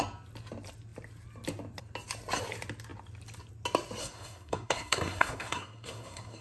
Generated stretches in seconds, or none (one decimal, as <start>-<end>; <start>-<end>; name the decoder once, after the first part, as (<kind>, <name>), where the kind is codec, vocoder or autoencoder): 4.0-6.4 (codec, SNAC)